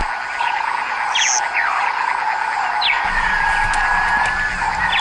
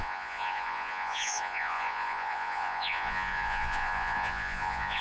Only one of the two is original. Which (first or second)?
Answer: first